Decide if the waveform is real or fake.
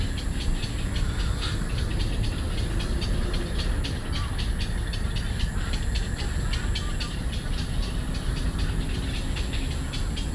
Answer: real